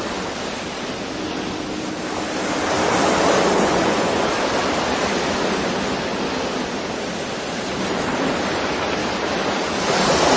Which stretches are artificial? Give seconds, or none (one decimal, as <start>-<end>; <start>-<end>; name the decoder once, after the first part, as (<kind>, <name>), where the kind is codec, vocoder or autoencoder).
3.5-4.3 (vocoder, Vocos)